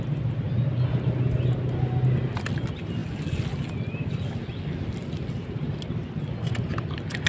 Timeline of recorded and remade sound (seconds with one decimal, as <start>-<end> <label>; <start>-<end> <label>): 0.0-7.3 recorded